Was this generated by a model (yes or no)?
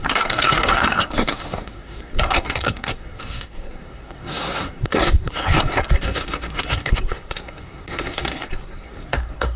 yes